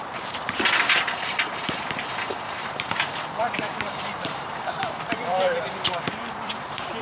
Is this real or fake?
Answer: fake